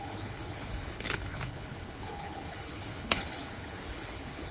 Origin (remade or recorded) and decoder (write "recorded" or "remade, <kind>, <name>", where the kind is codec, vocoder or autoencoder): remade, codec, HILCodec